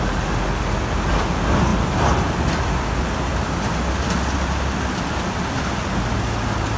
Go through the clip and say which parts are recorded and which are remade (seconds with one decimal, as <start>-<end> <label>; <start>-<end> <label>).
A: 0.0-6.8 recorded